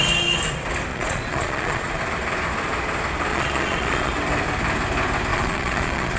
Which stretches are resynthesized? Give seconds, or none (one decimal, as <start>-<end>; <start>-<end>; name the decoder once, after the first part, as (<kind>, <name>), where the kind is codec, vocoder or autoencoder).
0.9-2.0 (vocoder, Vocos); 3.3-4.1; 5.3-6.2